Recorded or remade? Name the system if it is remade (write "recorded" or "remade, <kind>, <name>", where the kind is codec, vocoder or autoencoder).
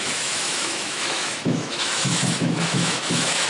remade, autoencoder, DAC-VAE